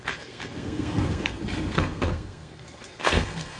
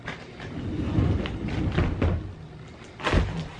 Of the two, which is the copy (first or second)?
first